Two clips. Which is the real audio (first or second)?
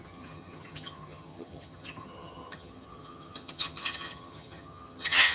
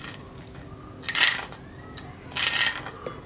second